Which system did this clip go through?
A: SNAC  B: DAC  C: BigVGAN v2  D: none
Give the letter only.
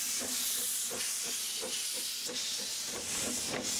D